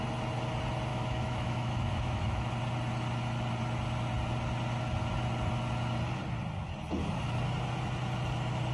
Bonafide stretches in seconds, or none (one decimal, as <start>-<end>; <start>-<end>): 0.0-0.9; 2.5-8.7